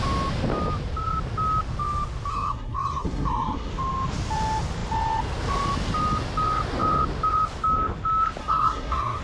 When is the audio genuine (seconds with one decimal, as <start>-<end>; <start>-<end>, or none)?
0.0-2.3; 3.7-8.4